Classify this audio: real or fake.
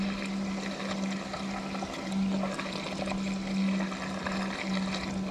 real